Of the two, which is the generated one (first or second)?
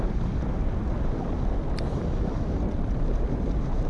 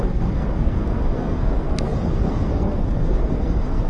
second